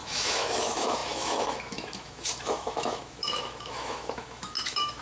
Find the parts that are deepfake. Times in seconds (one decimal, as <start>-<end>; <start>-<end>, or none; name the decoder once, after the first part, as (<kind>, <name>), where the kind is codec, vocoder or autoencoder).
0.0-5.0 (autoencoder, DAC-VAE)